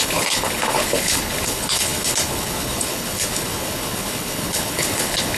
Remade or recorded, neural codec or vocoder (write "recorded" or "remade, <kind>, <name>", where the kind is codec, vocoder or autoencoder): remade, codec, HILCodec